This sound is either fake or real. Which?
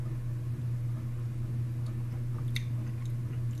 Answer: real